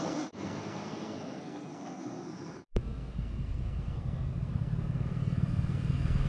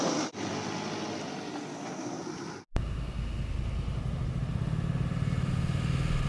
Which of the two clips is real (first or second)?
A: second